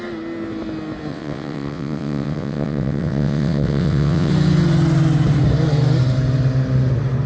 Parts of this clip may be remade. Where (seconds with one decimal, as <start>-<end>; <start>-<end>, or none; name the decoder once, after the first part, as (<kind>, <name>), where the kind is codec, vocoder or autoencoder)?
1.1-4.3 (vocoder, WaveNeXt)